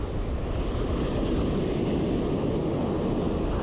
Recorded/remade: recorded